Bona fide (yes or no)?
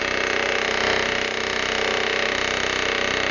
yes